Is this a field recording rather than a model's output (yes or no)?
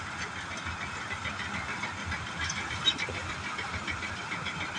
yes